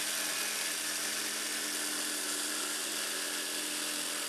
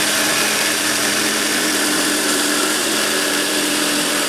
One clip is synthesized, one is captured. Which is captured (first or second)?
first